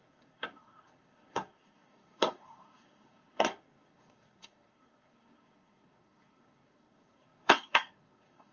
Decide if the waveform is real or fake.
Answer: fake